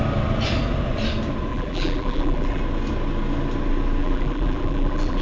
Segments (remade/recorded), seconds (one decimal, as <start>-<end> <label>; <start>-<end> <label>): 0.0-1.5 recorded; 1.5-2.6 remade; 2.6-4.0 recorded; 4.0-5.2 remade